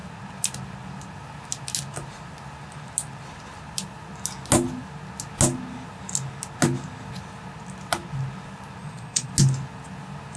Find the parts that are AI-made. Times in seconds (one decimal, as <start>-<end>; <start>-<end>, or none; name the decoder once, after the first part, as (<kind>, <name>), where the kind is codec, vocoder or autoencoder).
8.8-9.3 (vocoder, Vocos)